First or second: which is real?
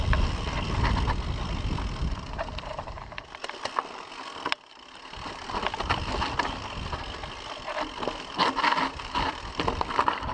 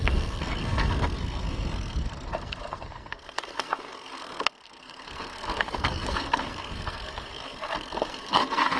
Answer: first